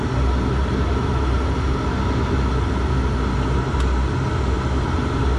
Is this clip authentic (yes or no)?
yes